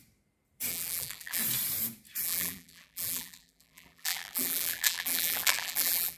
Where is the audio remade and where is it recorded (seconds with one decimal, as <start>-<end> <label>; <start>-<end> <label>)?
0.0-0.7 recorded; 0.7-1.4 remade; 1.4-2.2 recorded; 2.2-6.2 remade